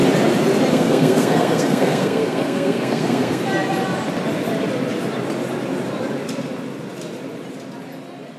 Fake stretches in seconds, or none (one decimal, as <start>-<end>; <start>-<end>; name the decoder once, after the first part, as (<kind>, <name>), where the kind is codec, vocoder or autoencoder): 0.7-3.4 (codec, SNAC)